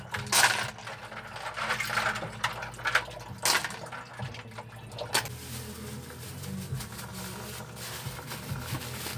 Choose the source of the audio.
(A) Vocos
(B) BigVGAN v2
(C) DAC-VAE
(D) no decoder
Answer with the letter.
D